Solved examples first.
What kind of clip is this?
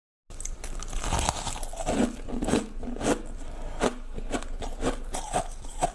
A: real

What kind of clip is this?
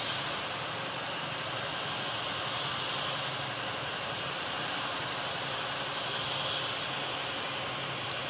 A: real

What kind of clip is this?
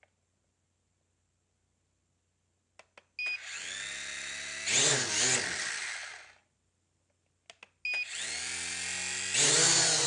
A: real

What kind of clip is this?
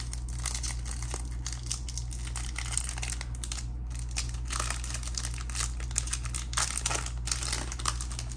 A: real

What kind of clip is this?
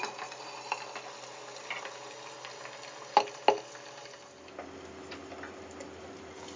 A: real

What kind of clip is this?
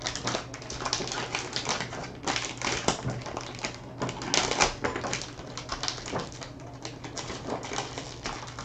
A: real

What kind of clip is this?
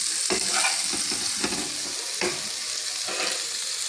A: real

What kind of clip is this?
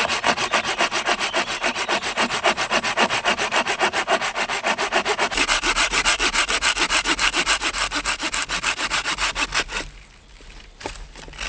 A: real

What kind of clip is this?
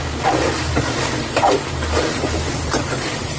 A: real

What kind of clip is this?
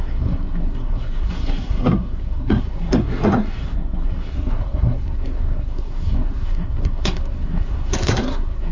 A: fake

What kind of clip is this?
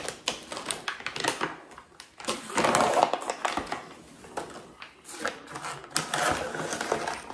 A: real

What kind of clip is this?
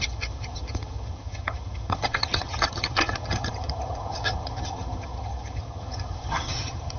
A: fake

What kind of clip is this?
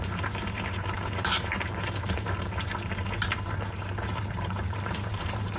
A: fake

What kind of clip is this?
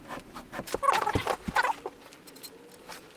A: fake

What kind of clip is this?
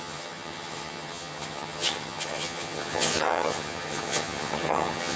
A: fake